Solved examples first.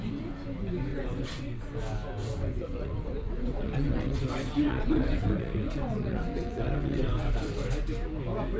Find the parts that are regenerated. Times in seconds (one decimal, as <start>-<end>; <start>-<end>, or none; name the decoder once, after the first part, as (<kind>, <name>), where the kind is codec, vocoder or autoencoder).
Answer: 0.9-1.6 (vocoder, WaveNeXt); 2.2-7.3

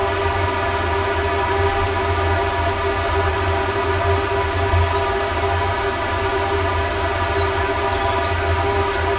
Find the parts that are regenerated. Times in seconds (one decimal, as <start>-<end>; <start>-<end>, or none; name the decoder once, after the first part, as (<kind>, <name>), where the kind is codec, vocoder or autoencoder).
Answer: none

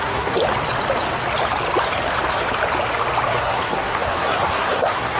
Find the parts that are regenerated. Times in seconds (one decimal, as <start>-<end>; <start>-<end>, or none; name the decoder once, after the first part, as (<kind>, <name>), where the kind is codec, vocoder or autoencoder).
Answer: 0.0-0.4 (codec, SNAC); 3.3-5.2